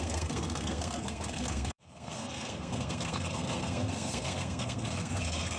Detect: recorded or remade remade